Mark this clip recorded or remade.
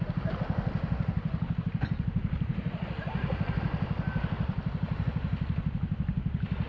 recorded